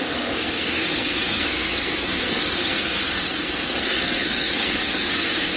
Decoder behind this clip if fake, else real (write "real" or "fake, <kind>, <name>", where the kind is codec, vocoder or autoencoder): fake, codec, SNAC